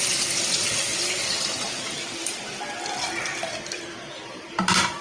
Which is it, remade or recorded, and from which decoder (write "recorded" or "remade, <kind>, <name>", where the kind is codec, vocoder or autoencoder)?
recorded